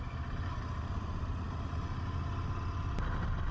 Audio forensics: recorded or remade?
recorded